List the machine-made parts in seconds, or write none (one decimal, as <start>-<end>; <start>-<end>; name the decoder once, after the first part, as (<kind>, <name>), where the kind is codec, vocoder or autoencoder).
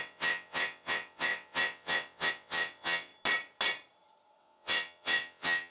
0.0-3.1 (vocoder, WaveNeXt); 4.4-5.7